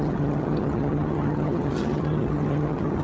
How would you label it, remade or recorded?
remade